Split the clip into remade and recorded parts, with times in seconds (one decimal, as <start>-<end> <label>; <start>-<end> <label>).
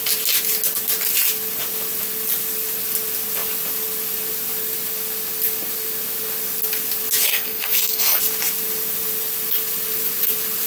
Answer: 0.0-7.3 recorded; 7.3-8.2 remade; 8.2-10.7 recorded